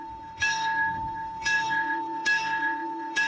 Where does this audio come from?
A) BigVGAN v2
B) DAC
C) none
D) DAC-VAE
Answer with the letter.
D